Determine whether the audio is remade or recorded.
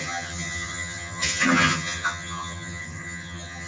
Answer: remade